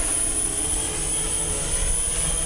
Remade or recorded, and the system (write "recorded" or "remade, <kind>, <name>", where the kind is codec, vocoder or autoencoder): recorded